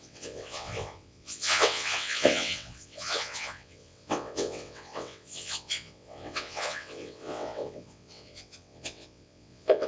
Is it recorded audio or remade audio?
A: remade